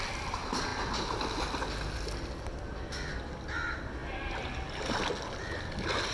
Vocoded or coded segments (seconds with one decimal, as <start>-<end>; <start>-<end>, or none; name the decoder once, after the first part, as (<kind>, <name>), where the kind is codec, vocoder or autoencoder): none